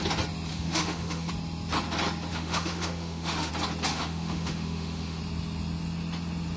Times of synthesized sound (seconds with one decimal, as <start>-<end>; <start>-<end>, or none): 0.5-1.3; 2.3-3.5; 3.9-5.2